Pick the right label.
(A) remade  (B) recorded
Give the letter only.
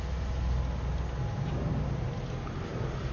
B